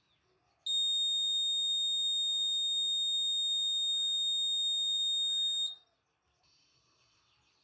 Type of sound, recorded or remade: recorded